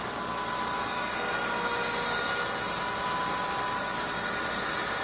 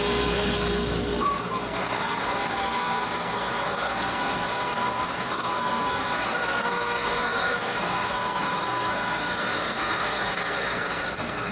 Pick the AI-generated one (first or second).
second